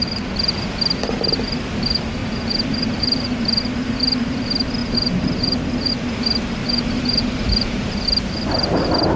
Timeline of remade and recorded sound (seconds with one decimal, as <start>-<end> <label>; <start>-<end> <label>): 0.0-2.2 recorded; 2.2-3.4 remade; 3.4-4.8 recorded; 4.8-5.9 remade; 5.9-6.6 recorded; 6.6-7.8 remade; 7.8-9.2 recorded

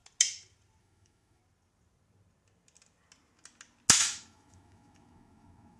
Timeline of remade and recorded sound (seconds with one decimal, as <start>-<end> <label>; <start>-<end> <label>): 0.0-0.8 recorded; 0.8-1.4 remade; 1.4-4.0 recorded; 4.0-5.8 remade